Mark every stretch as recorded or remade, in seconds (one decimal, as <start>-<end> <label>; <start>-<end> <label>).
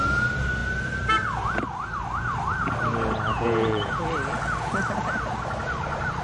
0.0-3.3 recorded; 3.3-4.0 remade; 4.0-6.2 recorded